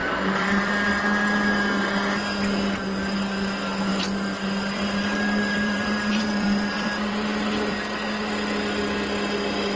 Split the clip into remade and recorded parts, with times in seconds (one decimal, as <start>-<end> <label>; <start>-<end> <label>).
0.0-1.0 remade; 1.0-3.9 recorded; 3.9-7.8 remade; 7.8-9.8 recorded